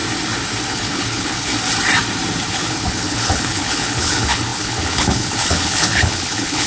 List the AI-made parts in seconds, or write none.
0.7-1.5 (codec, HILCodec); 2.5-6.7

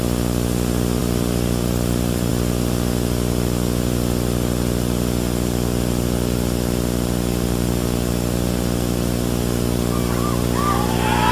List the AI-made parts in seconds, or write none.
1.0-2.3 (vocoder, BigVGAN v2)

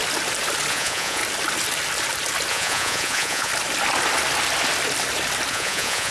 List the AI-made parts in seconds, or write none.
0.7-1.2 (vocoder, Vocos); 2.5-3.5; 5.5-6.1